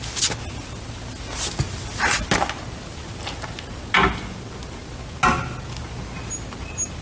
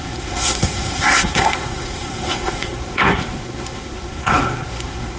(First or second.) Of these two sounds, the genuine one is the first